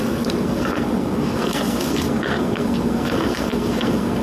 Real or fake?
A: fake